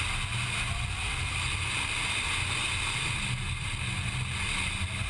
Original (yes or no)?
yes